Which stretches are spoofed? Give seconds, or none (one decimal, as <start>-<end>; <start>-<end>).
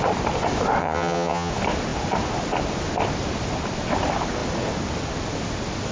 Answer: 0.8-1.5